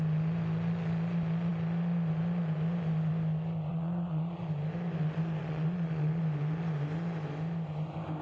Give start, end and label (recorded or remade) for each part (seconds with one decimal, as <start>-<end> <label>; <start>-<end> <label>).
0.0-3.7 recorded; 3.7-4.4 remade; 4.4-5.4 recorded; 5.4-6.2 remade; 6.2-8.2 recorded